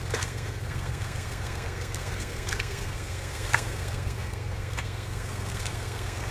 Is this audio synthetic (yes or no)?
yes